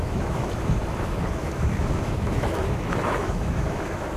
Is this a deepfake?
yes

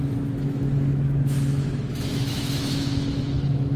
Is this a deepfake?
yes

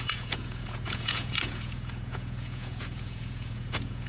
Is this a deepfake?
yes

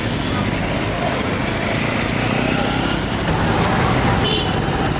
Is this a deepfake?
no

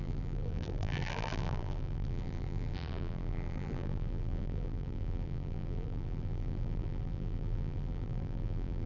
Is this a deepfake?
yes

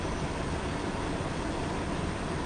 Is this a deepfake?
no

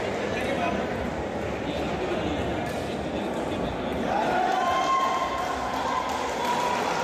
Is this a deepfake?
no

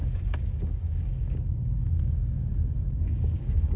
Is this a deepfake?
yes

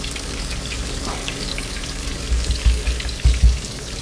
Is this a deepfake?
yes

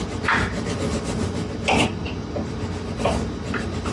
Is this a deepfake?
no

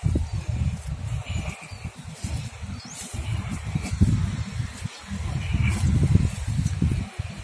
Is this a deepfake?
no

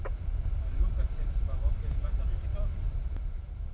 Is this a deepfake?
yes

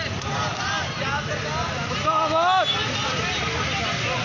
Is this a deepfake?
no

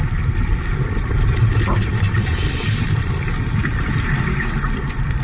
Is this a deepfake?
no